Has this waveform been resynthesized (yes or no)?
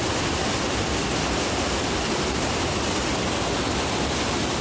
no